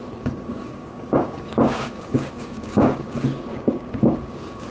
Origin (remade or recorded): remade